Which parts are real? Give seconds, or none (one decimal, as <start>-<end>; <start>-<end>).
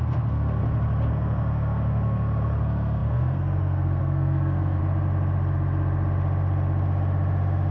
0.6-1.1; 4.8-7.7